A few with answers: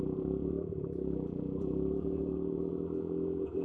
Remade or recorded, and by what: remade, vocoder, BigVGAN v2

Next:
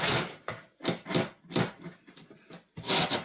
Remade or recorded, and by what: recorded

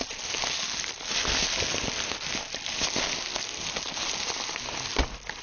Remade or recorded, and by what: recorded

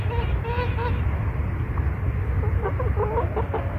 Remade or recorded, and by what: recorded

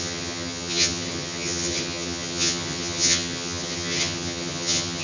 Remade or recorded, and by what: remade, vocoder, HiFi-GAN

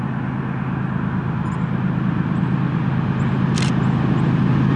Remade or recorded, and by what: recorded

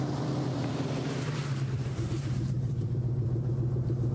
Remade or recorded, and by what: remade, vocoder, BigVGAN v2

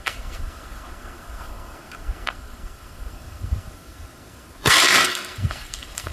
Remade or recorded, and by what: remade, codec, SNAC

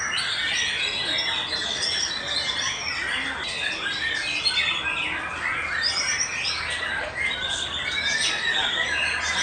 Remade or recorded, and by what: recorded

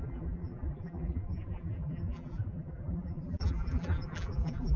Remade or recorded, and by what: remade, vocoder, BigVGAN v2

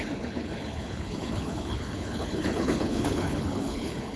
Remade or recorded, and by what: remade, codec, HILCodec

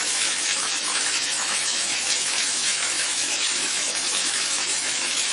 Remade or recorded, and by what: remade, autoencoder, DAC-VAE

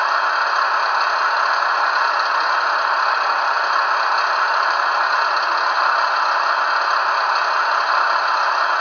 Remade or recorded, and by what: recorded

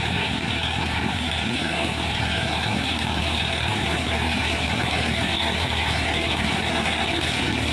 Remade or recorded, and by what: remade, codec, SNAC